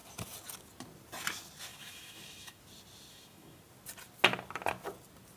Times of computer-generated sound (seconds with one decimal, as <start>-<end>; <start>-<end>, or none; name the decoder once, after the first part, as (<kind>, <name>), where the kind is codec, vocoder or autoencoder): 1.7-2.6 (autoencoder, DAC-VAE); 3.1-3.6